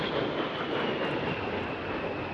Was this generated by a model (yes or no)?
no